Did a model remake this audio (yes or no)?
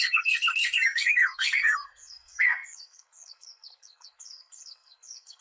yes